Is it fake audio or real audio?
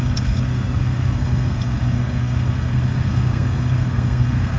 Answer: fake